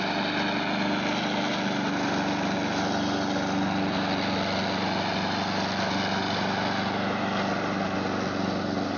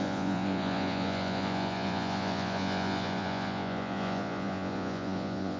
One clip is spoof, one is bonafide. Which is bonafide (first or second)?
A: first